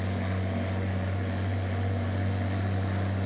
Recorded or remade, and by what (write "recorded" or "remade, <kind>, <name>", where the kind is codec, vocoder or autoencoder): recorded